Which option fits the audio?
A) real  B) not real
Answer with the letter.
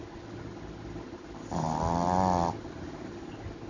A